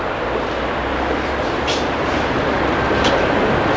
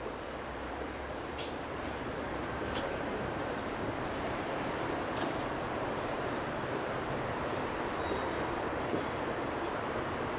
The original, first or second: first